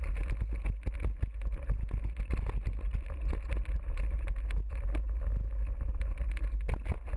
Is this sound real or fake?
real